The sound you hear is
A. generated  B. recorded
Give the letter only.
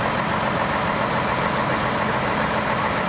B